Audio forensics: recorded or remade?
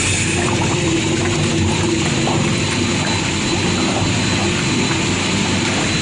recorded